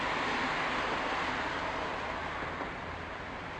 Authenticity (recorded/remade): recorded